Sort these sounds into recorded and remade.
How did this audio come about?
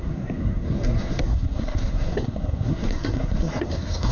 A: remade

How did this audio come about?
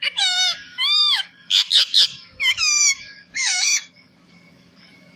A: remade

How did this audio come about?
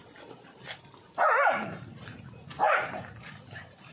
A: remade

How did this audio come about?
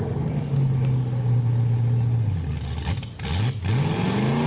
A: recorded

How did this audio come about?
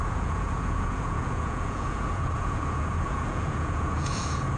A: remade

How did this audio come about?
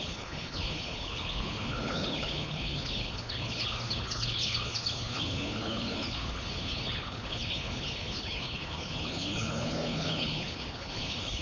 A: remade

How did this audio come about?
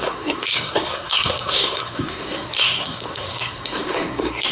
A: remade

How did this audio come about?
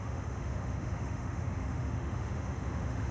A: remade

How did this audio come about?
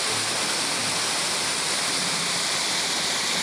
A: recorded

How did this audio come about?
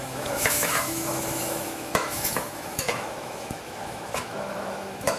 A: remade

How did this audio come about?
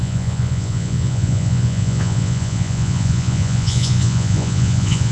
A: remade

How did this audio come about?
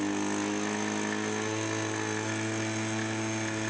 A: recorded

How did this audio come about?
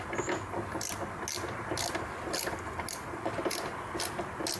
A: recorded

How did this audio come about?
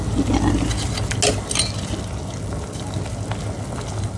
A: recorded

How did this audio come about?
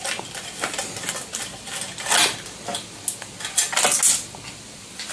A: recorded